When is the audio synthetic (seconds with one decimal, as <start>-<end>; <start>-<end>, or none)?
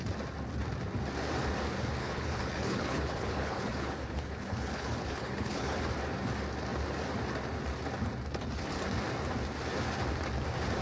2.0-5.8